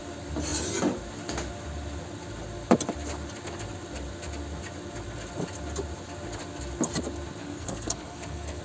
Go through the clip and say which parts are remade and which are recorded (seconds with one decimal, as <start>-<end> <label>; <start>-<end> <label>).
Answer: 0.0-7.4 recorded; 7.4-8.6 remade